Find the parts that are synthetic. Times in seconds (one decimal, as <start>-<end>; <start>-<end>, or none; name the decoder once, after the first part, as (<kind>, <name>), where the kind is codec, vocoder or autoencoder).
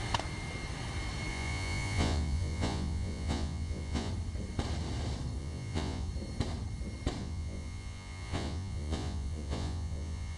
1.3-4.1 (vocoder, Vocos); 5.4-6.1; 7.2-10.4